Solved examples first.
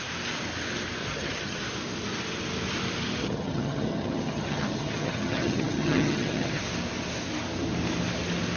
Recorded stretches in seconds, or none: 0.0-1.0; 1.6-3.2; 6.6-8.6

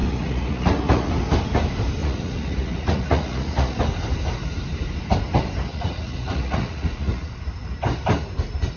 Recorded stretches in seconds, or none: 1.1-2.0; 3.8-5.7; 7.3-8.8

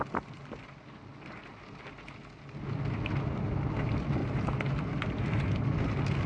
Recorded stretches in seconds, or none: 0.0-4.2; 4.8-6.3